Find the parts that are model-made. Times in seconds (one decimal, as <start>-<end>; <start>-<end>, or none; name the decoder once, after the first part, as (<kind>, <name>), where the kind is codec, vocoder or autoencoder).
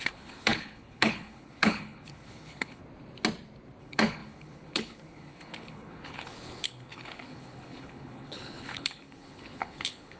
0.0-2.8 (codec, HILCodec); 3.8-10.2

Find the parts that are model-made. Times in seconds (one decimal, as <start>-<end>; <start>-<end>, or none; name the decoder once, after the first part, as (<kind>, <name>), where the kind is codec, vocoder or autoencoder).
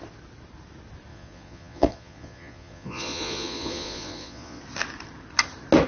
1.1-4.6 (vocoder, Vocos)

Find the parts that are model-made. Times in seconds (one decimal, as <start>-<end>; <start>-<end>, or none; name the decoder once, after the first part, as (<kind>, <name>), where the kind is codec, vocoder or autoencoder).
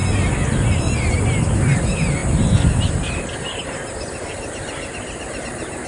none